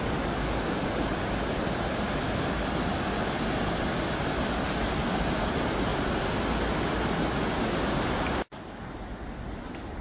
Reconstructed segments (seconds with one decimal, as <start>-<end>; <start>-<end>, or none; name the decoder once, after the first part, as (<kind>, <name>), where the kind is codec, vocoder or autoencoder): none